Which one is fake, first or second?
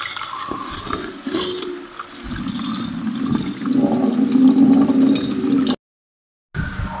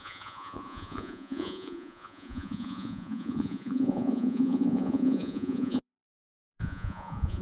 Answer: second